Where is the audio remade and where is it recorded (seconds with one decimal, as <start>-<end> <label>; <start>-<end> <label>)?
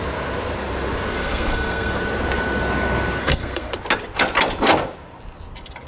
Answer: 0.0-1.2 recorded; 1.2-2.0 remade; 2.0-3.2 recorded; 3.2-3.7 remade; 3.7-5.9 recorded